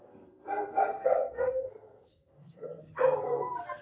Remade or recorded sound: remade